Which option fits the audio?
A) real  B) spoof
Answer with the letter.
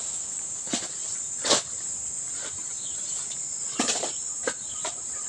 A